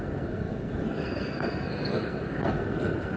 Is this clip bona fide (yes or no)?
no